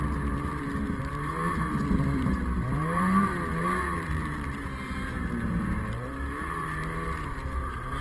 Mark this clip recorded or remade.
remade